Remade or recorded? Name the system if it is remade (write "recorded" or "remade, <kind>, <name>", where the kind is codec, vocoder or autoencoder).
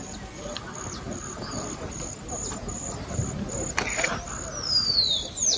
recorded